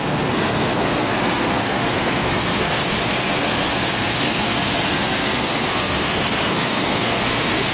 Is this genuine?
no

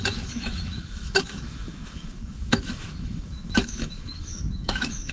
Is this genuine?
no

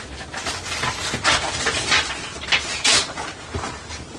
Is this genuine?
yes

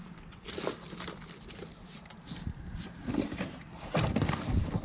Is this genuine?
no